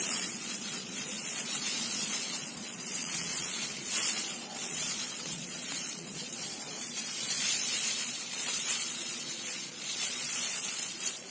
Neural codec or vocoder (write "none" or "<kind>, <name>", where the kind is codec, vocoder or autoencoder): vocoder, Vocos